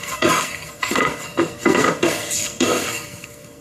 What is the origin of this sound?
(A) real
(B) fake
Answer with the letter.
B